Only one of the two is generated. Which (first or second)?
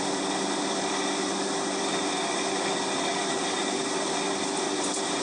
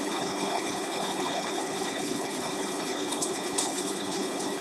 second